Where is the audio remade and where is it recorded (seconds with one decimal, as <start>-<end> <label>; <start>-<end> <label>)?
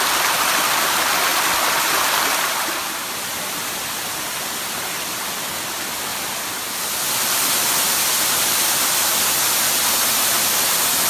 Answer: 0.0-1.3 recorded; 1.3-5.3 remade; 5.3-6.1 recorded; 6.1-8.8 remade; 8.8-11.1 recorded